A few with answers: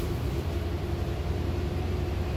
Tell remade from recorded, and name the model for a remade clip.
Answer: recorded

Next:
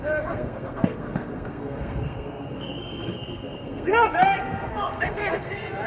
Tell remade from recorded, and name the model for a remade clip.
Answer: remade, codec, SNAC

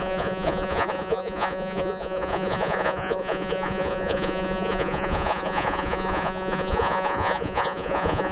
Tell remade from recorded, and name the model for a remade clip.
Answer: remade, vocoder, Vocos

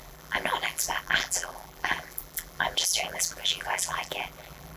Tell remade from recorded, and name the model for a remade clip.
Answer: remade, vocoder, BigVGAN v2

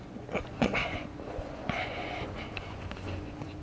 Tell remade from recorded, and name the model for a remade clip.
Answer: remade, vocoder, Vocos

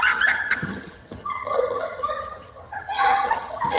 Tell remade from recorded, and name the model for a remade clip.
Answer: remade, vocoder, HiFi-GAN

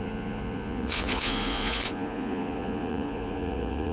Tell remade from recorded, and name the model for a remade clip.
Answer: remade, vocoder, Vocos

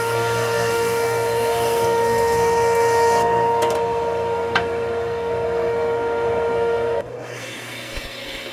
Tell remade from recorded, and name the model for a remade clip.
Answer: remade, codec, SNAC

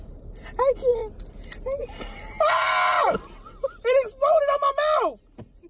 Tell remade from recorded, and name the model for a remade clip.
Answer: recorded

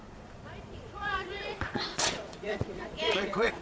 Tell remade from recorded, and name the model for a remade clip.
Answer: remade, vocoder, Vocos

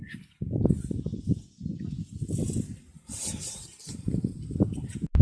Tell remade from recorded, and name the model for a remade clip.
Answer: recorded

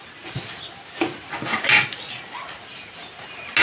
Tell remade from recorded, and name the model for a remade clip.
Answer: recorded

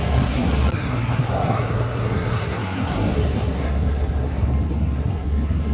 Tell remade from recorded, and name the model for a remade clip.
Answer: remade, codec, SNAC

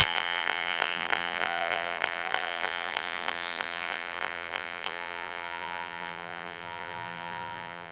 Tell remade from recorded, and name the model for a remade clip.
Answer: remade, vocoder, BigVGAN v2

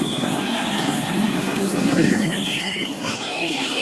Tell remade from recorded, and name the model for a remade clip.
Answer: remade, codec, SNAC